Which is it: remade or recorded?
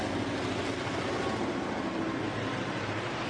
recorded